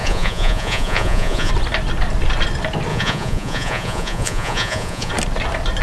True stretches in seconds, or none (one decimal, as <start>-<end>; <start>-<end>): 1.5-2.9; 5.1-5.8